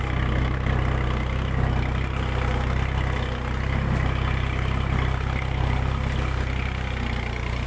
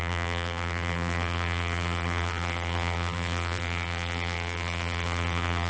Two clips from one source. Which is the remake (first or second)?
second